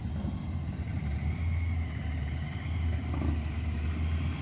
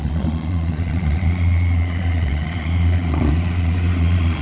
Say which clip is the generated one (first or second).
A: second